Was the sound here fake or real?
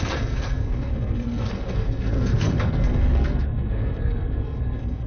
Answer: fake